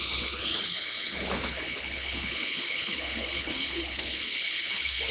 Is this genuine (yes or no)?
no